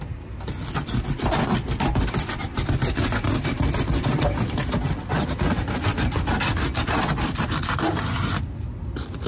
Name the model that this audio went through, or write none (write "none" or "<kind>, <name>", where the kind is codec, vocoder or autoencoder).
none